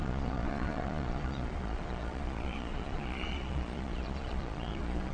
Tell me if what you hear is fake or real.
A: fake